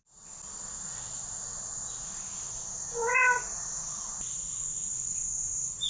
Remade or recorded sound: recorded